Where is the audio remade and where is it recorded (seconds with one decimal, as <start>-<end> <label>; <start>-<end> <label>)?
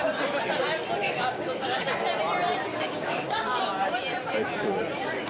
0.0-1.0 recorded; 1.0-1.8 remade; 1.8-2.7 recorded; 2.7-3.6 remade; 3.6-5.3 recorded